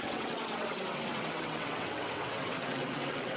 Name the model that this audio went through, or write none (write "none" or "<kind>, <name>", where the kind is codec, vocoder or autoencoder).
vocoder, WaveNeXt